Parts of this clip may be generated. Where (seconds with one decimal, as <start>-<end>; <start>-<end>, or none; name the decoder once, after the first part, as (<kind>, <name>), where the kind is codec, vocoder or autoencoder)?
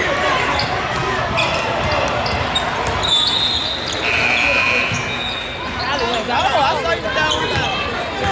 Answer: none